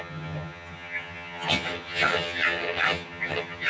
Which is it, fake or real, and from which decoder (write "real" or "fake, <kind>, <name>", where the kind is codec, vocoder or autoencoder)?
fake, vocoder, HiFi-GAN